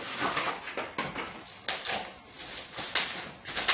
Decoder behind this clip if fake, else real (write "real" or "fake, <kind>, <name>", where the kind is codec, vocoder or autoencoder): real